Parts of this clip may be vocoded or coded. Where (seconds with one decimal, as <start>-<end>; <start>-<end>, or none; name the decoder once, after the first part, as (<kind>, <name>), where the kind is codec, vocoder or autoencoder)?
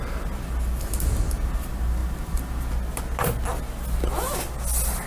none